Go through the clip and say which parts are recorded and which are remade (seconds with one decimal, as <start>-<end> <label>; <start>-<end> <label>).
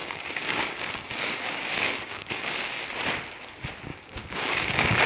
0.0-2.8 remade; 2.8-3.9 recorded; 3.9-5.1 remade